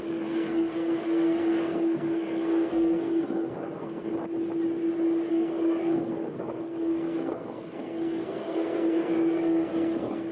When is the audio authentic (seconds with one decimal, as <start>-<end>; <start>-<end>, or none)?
4.1-5.3